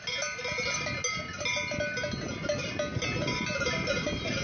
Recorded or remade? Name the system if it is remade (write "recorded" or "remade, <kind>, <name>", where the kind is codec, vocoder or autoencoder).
recorded